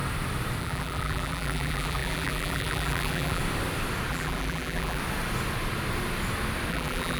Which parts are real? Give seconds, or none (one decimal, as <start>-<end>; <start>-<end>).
0.0-0.6; 3.4-4.1; 5.0-6.7